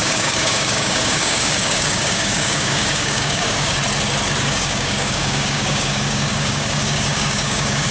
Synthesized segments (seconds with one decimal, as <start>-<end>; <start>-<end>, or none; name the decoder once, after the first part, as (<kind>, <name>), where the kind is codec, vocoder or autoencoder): 0.0-3.8 (codec, DAC); 4.4-7.9